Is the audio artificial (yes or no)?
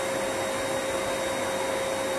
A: no